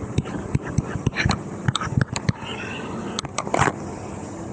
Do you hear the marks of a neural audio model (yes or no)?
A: no